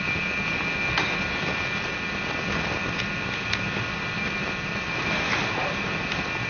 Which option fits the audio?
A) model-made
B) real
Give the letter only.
B